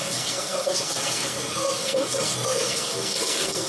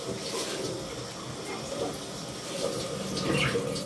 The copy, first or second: first